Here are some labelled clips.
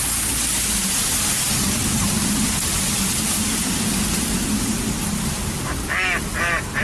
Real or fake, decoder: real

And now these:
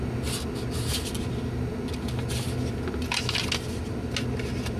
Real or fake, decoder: real